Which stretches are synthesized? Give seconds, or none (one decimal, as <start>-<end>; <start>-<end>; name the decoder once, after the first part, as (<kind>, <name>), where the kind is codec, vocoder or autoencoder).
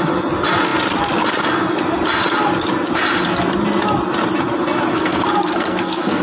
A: 4.9-6.2 (codec, SNAC)